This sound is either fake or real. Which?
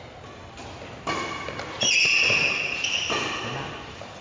real